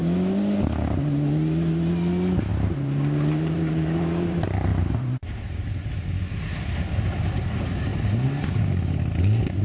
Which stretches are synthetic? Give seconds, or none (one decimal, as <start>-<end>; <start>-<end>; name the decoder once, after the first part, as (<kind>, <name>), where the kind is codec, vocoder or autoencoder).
2.5-5.9 (vocoder, BigVGAN v2)